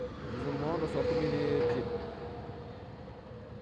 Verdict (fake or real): real